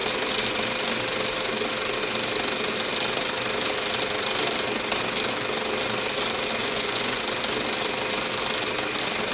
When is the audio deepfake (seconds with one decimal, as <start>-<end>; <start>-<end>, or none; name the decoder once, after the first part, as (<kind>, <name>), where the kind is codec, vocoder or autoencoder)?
6.6-7.2 (vocoder, Vocos)